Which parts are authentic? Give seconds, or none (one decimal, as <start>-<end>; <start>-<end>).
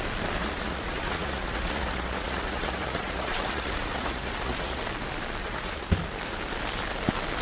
0.0-0.4; 4.8-5.4; 5.9-7.4